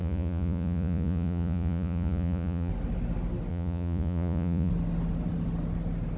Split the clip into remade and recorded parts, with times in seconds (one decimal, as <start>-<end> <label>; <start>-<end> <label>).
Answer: 0.0-2.7 remade; 2.7-3.5 recorded; 3.5-4.7 remade; 4.7-6.2 recorded